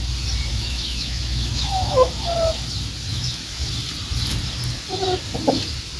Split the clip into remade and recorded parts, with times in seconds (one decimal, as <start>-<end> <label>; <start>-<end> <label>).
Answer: 0.0-0.5 recorded; 0.5-2.1 remade; 2.1-3.1 recorded; 3.1-3.7 remade; 3.7-6.0 recorded